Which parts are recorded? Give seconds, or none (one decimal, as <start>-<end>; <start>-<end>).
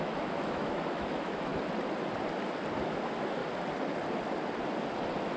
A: 1.5-2.8; 3.4-5.4